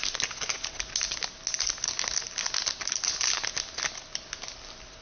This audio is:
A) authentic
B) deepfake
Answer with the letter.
A